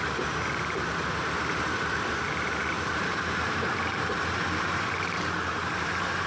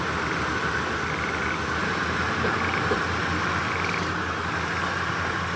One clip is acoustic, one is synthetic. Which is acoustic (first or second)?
second